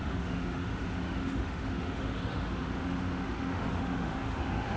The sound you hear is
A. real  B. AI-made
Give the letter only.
B